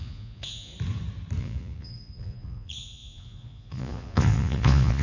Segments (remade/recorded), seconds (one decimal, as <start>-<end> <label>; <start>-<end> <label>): 0.0-0.7 remade; 0.7-1.4 recorded; 1.4-5.0 remade